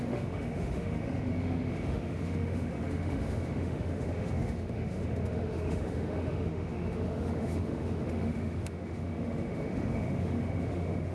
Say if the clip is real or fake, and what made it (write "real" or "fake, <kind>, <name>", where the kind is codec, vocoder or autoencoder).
fake, autoencoder, DAC-VAE